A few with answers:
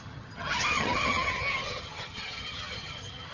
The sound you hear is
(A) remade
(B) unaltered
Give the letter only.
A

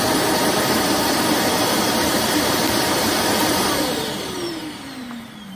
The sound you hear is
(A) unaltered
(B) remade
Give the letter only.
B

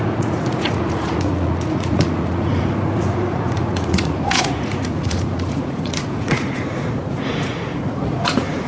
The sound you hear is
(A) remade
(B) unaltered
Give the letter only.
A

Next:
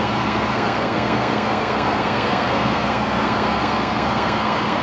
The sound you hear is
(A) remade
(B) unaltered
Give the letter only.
A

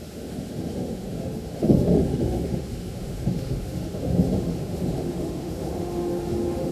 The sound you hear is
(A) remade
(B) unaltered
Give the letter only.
A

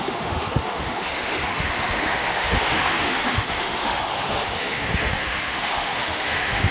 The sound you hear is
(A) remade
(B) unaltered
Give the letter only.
A